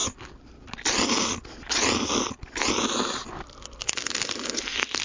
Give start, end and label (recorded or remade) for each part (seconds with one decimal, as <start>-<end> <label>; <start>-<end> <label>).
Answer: 0.0-5.0 recorded